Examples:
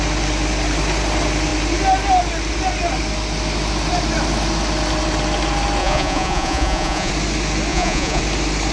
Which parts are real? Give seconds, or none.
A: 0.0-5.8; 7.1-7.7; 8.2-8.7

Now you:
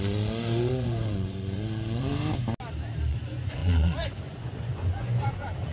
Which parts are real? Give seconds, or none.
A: 2.1-3.1